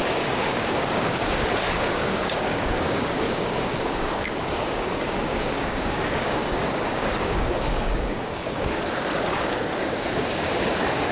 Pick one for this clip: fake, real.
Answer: fake